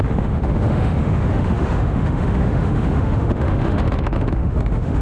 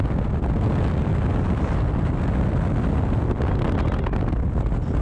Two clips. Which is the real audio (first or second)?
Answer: second